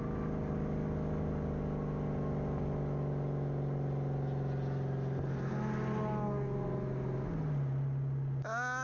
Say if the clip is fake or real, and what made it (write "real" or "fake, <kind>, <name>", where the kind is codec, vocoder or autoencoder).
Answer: real